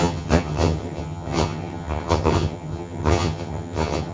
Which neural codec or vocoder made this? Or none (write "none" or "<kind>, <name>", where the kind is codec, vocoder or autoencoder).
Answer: vocoder, HiFi-GAN